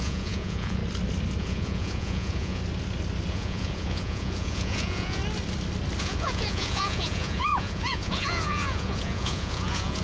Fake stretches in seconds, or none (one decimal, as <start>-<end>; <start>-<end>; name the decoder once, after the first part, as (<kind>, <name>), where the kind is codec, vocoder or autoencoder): 0.0-0.8 (vocoder, Vocos); 1.4-2.6; 3.3-5.2; 6.0-10.0